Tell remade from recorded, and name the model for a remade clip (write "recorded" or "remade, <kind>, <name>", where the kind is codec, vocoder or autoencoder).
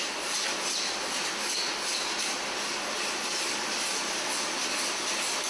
recorded